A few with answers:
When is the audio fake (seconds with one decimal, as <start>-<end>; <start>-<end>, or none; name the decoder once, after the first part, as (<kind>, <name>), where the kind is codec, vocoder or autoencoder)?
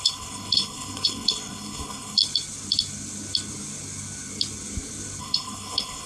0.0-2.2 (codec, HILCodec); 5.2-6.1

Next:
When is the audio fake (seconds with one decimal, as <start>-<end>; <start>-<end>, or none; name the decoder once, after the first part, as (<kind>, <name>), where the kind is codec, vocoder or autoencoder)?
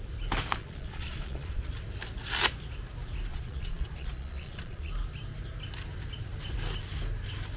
0.6-1.7 (vocoder, Vocos); 3.3-4.9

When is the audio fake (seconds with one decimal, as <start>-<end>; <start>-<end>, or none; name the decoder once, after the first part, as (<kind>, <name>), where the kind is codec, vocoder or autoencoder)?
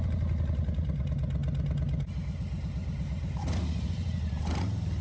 none